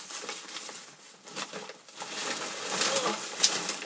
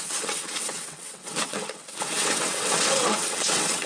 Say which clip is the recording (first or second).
first